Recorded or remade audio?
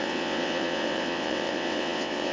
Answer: remade